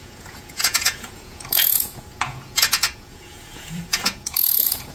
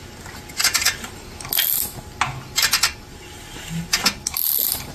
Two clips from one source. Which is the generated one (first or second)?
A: first